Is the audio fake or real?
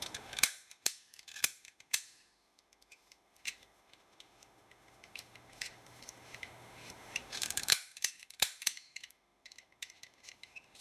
fake